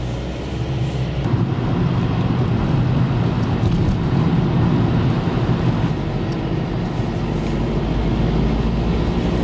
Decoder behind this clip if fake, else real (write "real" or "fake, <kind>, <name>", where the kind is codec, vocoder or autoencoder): real